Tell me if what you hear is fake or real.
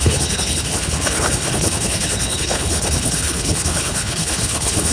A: fake